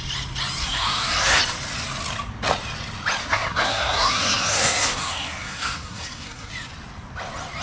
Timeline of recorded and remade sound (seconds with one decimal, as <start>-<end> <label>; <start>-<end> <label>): 0.0-0.6 recorded; 0.6-1.4 remade; 1.4-3.2 recorded; 3.2-6.5 remade; 6.5-7.6 recorded